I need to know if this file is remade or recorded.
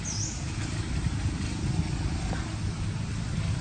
recorded